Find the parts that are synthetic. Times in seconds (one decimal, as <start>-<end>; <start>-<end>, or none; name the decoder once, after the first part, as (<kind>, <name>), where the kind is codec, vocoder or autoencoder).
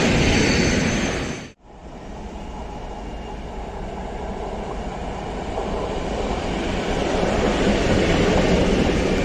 5.0-6.5 (vocoder, BigVGAN v2)